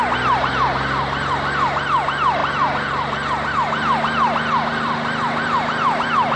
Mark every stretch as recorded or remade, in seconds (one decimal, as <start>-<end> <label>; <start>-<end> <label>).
0.0-6.4 recorded

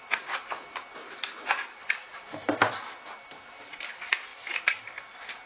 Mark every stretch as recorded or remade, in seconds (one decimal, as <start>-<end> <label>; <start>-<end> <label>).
0.0-5.5 recorded

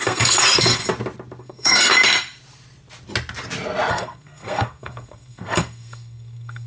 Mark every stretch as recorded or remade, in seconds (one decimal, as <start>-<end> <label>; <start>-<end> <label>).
0.0-0.8 remade; 0.8-1.4 recorded; 1.4-1.9 remade; 1.9-3.9 recorded; 3.9-6.7 remade

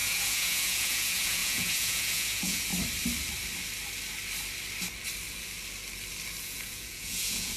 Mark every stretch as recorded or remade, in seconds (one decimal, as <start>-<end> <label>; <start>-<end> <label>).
0.0-2.7 remade; 2.7-6.4 recorded; 6.4-7.6 remade

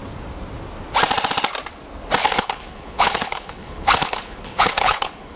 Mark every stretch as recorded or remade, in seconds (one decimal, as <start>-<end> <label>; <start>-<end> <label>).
0.0-2.2 recorded; 2.2-5.4 remade

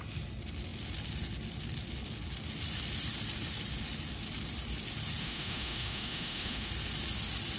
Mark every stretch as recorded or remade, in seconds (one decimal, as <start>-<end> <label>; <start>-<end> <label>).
0.0-5.2 recorded; 5.2-6.7 remade; 6.7-7.6 recorded

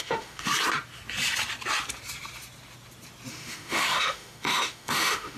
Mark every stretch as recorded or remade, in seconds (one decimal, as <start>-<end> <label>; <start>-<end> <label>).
0.0-0.5 remade; 0.5-3.3 recorded; 3.3-5.4 remade

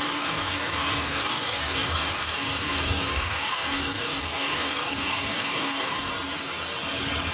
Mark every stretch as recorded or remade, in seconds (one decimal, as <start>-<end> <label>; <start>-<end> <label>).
0.0-6.1 remade; 6.1-7.3 recorded